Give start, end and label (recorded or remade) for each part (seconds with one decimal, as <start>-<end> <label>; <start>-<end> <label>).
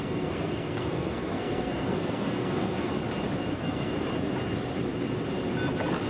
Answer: 0.0-2.9 remade; 2.9-3.5 recorded; 3.5-3.9 remade; 3.9-6.1 recorded